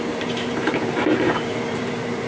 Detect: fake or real fake